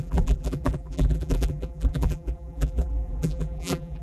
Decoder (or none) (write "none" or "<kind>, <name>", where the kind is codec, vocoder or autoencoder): vocoder, BigVGAN v2